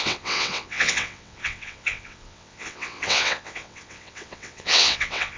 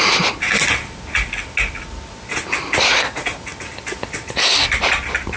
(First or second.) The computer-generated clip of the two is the first